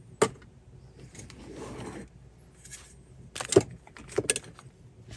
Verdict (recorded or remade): recorded